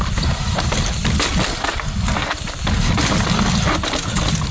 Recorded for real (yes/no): yes